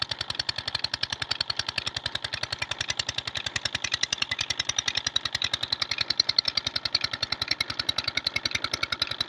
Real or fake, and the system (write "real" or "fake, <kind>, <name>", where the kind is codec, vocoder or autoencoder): real